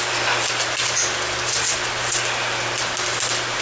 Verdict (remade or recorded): recorded